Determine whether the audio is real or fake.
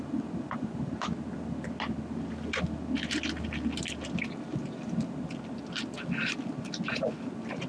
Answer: real